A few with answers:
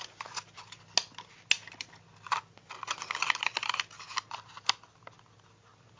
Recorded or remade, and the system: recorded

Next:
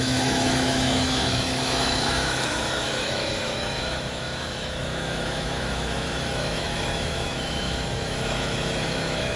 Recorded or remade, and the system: remade, autoencoder, DAC-VAE